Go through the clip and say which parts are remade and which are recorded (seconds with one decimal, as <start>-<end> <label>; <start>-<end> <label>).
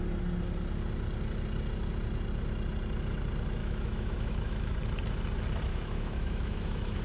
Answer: 0.0-3.6 recorded; 3.6-4.8 remade; 4.8-5.7 recorded; 5.7-7.0 remade